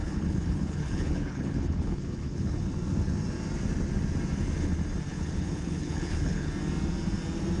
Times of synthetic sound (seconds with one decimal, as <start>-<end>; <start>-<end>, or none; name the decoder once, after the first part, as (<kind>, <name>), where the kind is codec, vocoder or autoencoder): 0.0-2.7 (codec, HILCodec); 5.1-6.5